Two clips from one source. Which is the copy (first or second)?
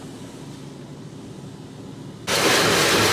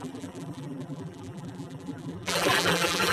second